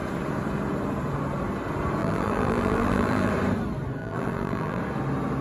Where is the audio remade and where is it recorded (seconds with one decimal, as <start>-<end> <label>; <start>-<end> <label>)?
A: 0.0-2.0 recorded; 2.0-3.3 remade; 3.3-4.0 recorded; 4.0-4.8 remade; 4.8-5.4 recorded